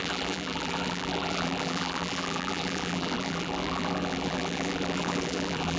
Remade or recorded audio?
remade